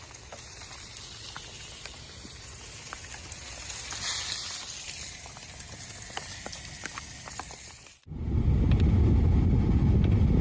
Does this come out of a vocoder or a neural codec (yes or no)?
no